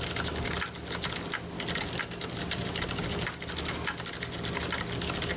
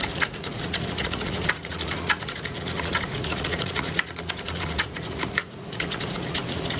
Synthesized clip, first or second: second